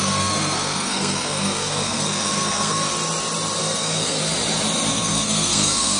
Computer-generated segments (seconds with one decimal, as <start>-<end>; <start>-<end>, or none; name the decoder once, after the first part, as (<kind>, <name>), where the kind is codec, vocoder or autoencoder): 0.0-2.9 (codec, SNAC); 3.6-4.2; 4.9-6.0